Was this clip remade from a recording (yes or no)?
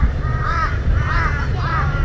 yes